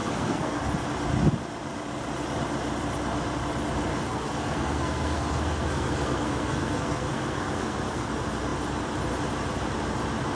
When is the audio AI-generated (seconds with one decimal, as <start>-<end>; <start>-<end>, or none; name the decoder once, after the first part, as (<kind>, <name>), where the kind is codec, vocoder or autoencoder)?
0.0-0.6 (codec, SNAC); 3.9-8.1